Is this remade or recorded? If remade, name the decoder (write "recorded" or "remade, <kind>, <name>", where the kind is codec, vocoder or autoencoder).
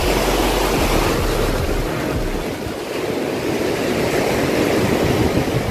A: recorded